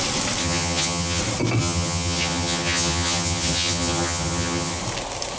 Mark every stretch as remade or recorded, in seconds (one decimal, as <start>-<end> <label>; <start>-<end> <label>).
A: 0.0-0.4 recorded; 0.4-1.2 remade; 1.2-1.6 recorded; 1.6-4.8 remade; 4.8-5.4 recorded